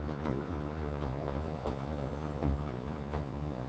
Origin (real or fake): fake